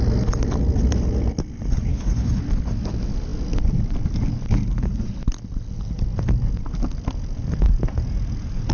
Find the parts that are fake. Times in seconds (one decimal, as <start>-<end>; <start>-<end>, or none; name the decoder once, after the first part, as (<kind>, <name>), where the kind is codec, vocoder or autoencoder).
1.9-2.4 (codec, HILCodec)

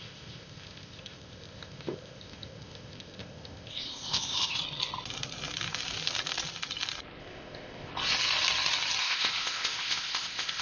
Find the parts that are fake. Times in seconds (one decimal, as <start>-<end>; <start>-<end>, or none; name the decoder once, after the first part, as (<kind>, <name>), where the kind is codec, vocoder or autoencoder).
0.0-4.6 (codec, ZipCodec); 7.2-7.9; 9.0-10.6

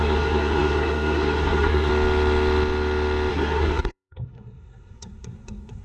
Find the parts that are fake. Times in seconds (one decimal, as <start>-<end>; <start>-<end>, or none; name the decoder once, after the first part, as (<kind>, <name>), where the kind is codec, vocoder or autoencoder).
0.0-1.9 (codec, SNAC); 3.3-5.8

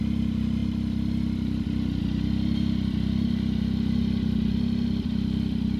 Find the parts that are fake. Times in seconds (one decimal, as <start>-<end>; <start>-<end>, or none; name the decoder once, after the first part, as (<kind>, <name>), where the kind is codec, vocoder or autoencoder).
none

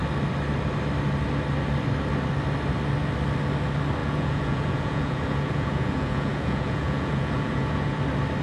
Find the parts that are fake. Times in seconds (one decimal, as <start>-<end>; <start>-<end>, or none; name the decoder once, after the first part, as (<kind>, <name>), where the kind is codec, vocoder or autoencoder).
4.0-8.0 (vocoder, Vocos)

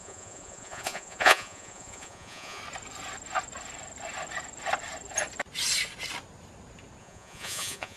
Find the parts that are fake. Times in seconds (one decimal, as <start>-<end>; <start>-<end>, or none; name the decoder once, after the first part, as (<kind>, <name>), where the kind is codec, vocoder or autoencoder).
0.0-2.6 (vocoder, Vocos); 7.0-8.0